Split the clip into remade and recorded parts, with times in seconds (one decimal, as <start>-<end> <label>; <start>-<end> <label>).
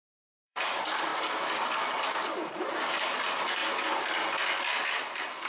0.0-1.1 remade; 1.1-2.5 recorded; 2.5-3.6 remade; 3.6-4.9 recorded; 4.9-5.5 remade